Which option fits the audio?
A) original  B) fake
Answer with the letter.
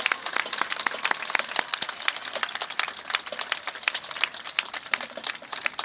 B